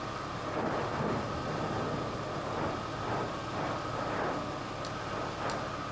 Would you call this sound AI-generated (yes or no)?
no